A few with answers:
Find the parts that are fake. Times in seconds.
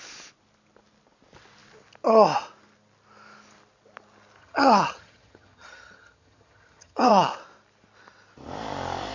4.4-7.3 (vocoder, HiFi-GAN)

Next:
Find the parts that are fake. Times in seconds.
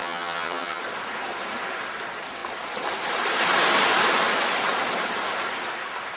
0.0-0.8 (vocoder, HiFi-GAN)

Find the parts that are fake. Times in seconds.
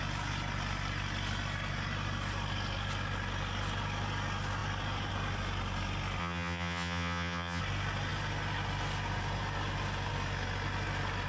6.2-7.6 (vocoder, HiFi-GAN)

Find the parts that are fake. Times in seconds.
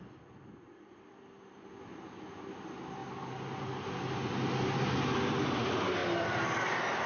none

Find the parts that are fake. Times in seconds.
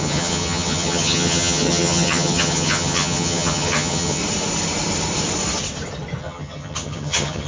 0.0-4.2 (vocoder, HiFi-GAN); 6.2-7.5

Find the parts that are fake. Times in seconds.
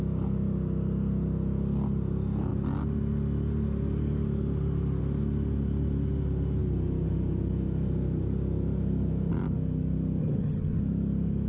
10.2-10.8 (vocoder, HiFi-GAN)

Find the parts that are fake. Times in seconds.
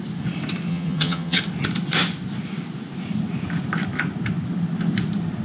0.7-1.4 (vocoder, HiFi-GAN)